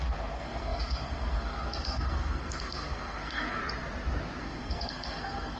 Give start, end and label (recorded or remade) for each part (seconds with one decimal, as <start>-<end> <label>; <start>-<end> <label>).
0.0-3.6 remade; 3.6-4.4 recorded; 4.4-5.6 remade